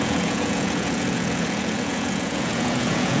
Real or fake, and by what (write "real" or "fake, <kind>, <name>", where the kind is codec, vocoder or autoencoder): fake, vocoder, Vocos